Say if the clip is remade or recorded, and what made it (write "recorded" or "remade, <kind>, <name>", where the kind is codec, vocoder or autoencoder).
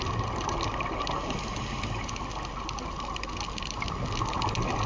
recorded